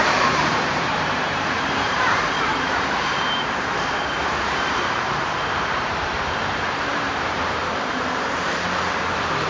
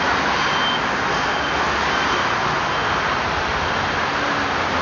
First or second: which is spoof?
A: first